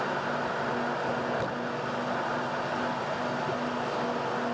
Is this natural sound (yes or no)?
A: yes